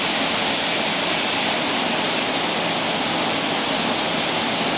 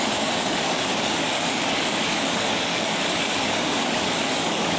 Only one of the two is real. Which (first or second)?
first